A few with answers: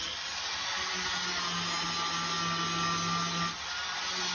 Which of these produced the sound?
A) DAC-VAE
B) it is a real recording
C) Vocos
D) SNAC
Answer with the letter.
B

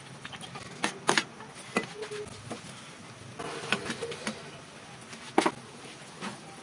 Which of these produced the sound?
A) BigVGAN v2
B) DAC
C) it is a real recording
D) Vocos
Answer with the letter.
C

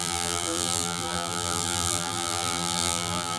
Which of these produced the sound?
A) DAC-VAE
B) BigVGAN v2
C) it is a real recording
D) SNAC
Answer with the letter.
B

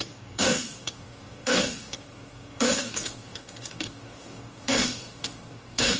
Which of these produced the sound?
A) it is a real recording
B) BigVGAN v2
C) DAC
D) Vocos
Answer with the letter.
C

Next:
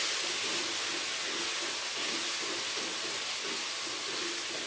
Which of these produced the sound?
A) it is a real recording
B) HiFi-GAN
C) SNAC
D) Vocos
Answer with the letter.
A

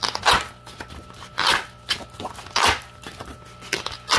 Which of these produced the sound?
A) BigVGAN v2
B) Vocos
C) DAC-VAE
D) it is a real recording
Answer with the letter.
D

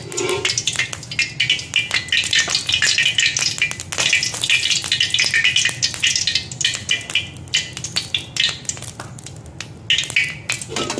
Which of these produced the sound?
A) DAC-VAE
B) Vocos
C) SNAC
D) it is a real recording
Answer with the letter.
D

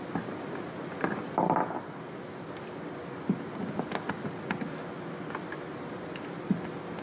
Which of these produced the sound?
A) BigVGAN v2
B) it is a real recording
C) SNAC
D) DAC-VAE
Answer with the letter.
B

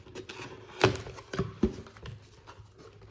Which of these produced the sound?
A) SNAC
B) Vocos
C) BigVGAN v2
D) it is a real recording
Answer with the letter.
D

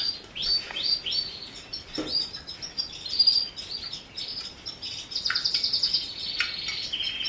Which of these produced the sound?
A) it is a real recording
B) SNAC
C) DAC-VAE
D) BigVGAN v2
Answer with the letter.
A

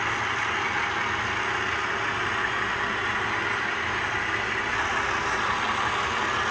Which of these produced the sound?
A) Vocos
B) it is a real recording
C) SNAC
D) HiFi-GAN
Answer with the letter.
B